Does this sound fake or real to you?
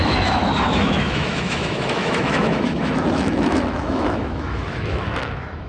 fake